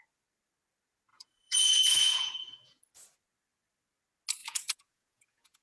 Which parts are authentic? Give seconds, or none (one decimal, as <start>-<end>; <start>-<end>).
0.0-1.1; 2.8-4.4